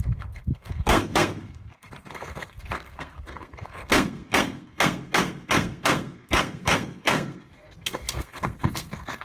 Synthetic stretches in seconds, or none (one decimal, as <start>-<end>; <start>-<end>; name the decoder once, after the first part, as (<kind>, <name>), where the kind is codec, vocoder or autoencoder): 0.0-9.2 (codec, SNAC)